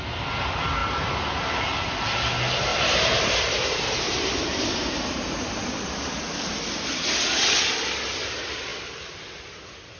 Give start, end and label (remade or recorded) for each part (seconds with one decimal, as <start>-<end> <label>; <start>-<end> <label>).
0.0-2.7 recorded; 2.7-6.6 remade; 6.6-10.0 recorded